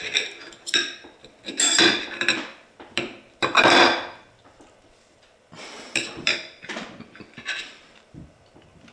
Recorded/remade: remade